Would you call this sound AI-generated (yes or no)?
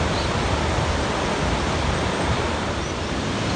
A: yes